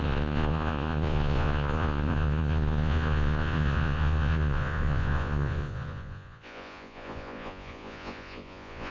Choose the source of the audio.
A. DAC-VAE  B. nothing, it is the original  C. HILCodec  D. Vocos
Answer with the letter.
D